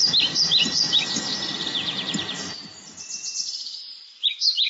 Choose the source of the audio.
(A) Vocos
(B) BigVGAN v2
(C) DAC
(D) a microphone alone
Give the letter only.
B